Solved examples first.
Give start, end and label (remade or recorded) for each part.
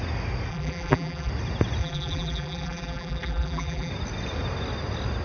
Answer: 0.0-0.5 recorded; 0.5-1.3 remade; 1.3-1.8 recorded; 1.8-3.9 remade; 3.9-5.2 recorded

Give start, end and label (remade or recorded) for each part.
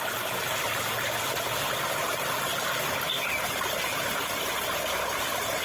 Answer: 0.0-5.6 recorded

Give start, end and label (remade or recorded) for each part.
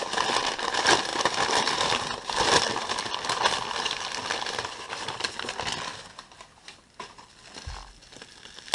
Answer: 0.0-1.1 recorded; 1.1-4.4 remade; 4.4-5.9 recorded; 5.9-7.3 remade; 7.3-8.7 recorded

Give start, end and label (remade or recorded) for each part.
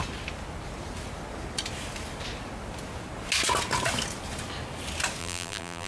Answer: 0.0-5.2 recorded; 5.2-5.9 remade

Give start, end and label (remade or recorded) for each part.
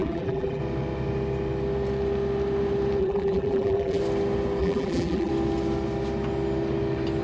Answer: 0.0-0.6 remade; 0.6-3.0 recorded; 3.0-4.0 remade; 4.0-4.6 recorded; 4.6-5.3 remade; 5.3-7.2 recorded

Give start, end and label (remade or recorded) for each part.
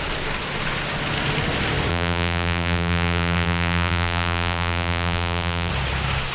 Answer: 0.0-1.9 recorded; 1.9-5.7 remade; 5.7-6.3 recorded